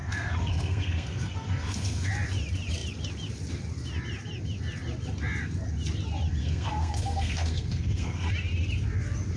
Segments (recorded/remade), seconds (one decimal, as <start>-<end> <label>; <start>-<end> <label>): 0.0-2.1 remade; 2.1-6.4 recorded; 6.4-8.3 remade; 8.3-9.4 recorded